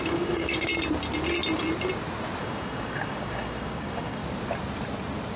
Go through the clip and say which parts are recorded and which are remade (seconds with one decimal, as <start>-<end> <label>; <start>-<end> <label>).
0.0-0.7 remade; 0.7-2.4 recorded; 2.4-4.2 remade; 4.2-5.4 recorded